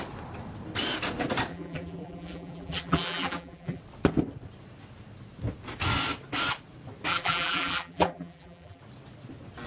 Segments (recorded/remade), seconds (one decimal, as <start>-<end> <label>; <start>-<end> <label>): 0.0-1.5 recorded; 1.5-3.8 remade; 3.8-7.1 recorded; 7.1-8.8 remade; 8.8-9.7 recorded